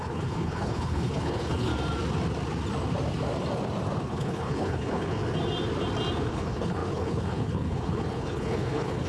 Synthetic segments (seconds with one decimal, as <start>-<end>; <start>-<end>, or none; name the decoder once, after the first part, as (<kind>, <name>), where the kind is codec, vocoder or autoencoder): 0.0-1.7 (codec, HILCodec); 4.0-5.2; 6.3-9.1